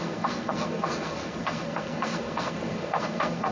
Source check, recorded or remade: remade